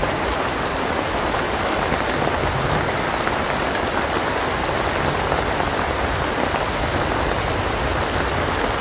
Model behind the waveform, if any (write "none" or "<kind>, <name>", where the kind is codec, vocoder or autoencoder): none